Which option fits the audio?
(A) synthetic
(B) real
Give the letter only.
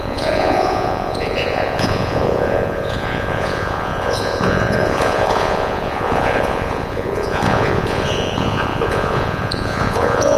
A